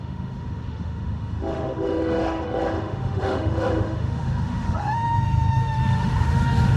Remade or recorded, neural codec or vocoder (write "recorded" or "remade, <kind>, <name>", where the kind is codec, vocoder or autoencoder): remade, autoencoder, DAC-VAE